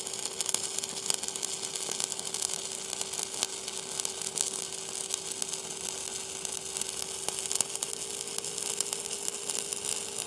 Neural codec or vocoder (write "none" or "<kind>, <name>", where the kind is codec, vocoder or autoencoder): none